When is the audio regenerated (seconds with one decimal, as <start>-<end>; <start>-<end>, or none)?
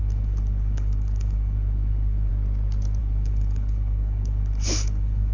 0.0-2.3; 3.0-5.3